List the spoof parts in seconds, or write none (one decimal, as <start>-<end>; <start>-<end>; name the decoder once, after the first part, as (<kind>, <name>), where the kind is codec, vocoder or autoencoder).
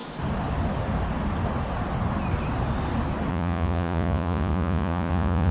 3.3-5.5 (vocoder, Vocos)